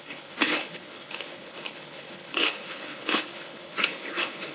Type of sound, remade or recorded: remade